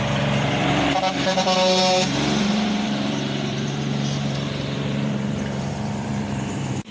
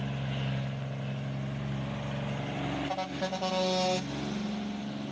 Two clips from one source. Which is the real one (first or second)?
second